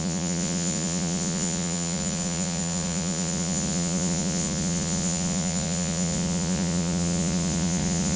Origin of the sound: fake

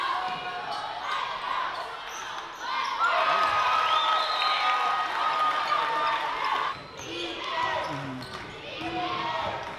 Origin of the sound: real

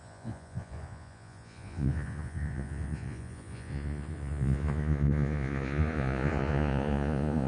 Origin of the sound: fake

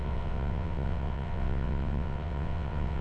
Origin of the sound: fake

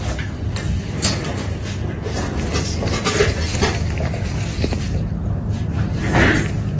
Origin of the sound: real